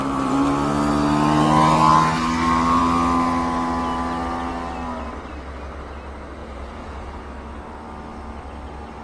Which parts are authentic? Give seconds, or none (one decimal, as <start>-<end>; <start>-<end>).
0.0-6.4; 7.2-9.0